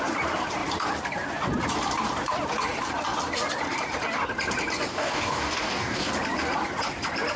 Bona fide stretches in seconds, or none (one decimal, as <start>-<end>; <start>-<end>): 0.0-4.9; 6.1-7.4